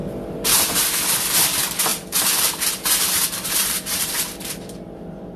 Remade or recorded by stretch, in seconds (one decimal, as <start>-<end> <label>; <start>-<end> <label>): 0.0-0.8 remade; 0.8-1.9 recorded; 1.9-5.4 remade